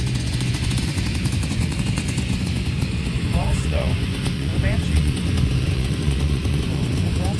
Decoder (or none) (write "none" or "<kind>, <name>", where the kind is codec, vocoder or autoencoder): vocoder, Vocos